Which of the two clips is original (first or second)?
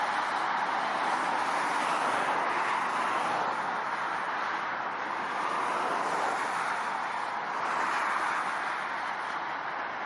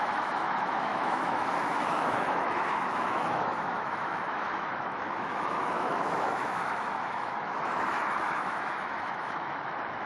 first